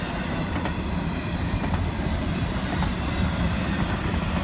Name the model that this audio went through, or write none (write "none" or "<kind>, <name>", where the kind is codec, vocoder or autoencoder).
none